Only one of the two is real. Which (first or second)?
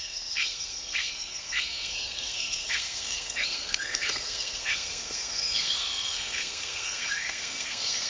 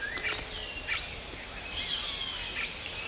second